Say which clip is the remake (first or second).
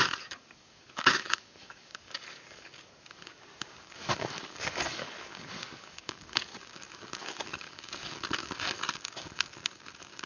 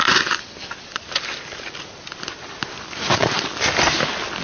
first